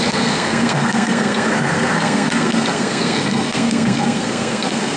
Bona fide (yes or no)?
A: no